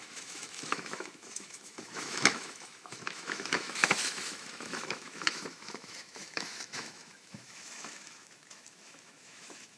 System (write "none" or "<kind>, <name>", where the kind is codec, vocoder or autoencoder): autoencoder, DAC-VAE